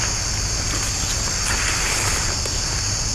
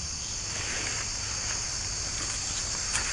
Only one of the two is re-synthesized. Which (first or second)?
second